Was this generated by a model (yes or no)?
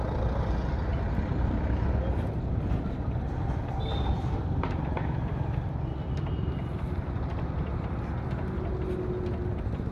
no